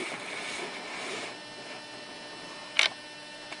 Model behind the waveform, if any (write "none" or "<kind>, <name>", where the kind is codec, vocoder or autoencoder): none